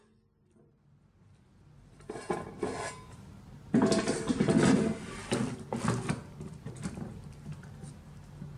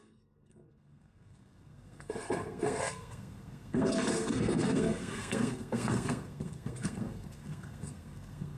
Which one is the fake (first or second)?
second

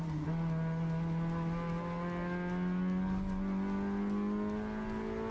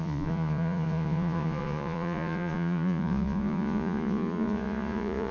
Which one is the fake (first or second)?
second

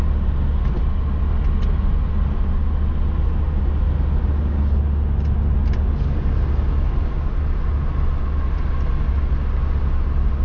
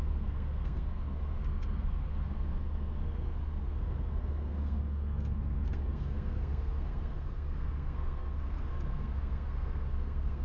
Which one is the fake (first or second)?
second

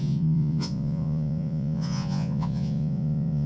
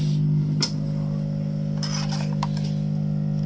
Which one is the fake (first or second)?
first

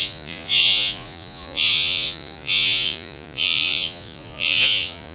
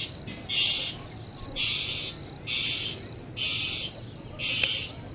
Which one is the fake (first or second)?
first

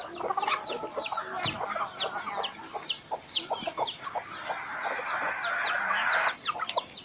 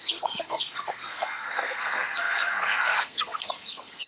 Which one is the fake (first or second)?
second